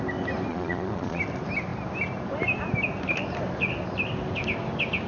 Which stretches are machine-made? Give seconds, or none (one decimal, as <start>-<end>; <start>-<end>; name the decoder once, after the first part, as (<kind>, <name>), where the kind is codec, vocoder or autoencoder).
0.5-1.2 (vocoder, Vocos)